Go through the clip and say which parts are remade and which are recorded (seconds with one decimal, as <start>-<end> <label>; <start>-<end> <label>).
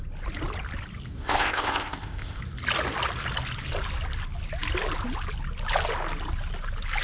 0.0-1.2 recorded; 1.2-2.4 remade; 2.4-7.0 recorded